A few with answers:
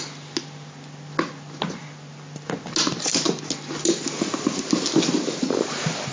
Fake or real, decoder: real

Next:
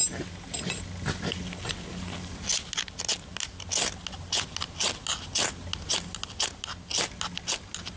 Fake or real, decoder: real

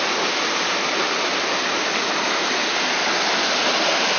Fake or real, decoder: real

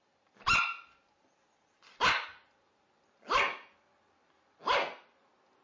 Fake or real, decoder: real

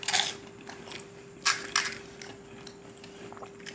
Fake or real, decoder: real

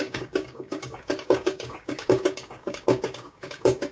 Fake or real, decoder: fake, codec, DAC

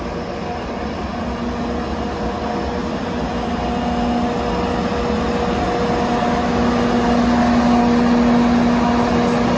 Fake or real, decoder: real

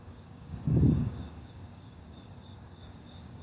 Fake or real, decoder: fake, codec, DAC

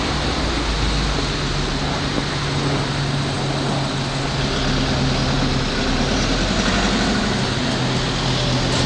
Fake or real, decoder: real